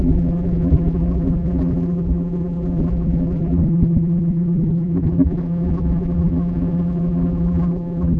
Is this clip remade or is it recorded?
remade